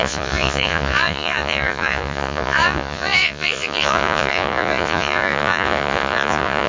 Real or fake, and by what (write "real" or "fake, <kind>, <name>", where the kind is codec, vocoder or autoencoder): fake, vocoder, Vocos